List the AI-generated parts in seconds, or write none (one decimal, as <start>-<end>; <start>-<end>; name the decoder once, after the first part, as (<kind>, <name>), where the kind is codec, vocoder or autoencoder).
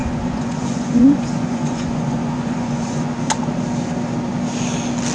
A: 0.0-3.1 (vocoder, Vocos)